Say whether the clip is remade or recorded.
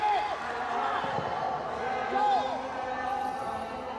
recorded